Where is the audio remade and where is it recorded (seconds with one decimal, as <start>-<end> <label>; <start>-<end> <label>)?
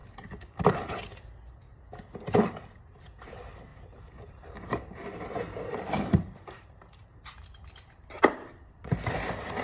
0.0-1.3 remade; 1.3-3.7 recorded; 3.7-8.9 remade; 8.9-9.6 recorded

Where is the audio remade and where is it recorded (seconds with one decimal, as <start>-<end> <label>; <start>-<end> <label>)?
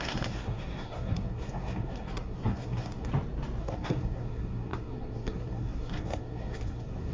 0.0-3.1 remade; 3.1-3.6 recorded; 3.6-7.1 remade